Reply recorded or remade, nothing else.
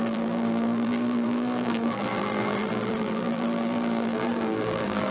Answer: remade